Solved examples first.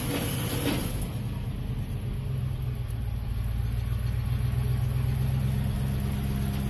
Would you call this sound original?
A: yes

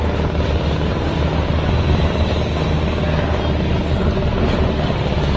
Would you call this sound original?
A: yes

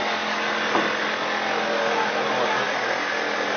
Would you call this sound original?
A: yes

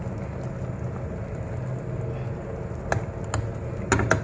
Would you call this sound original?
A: yes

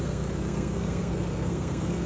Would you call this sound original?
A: no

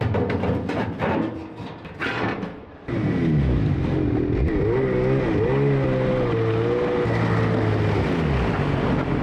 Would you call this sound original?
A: yes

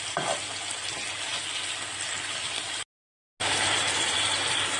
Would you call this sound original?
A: yes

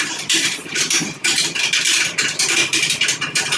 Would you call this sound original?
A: no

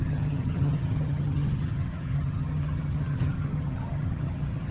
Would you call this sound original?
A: no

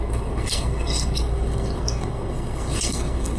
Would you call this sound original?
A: no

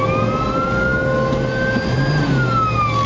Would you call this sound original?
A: yes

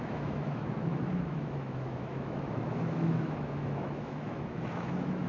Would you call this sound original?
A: no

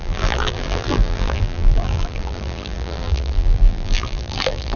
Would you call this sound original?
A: no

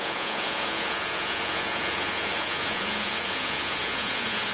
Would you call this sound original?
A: no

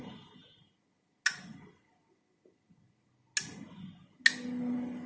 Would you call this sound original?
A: yes